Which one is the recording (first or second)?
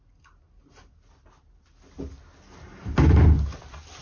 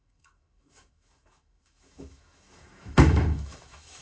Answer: first